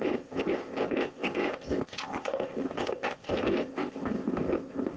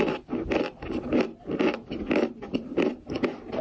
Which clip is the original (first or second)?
second